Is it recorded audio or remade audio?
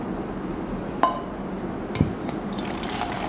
recorded